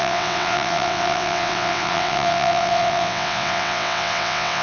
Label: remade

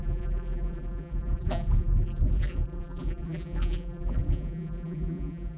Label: remade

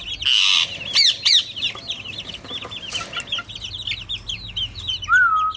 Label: recorded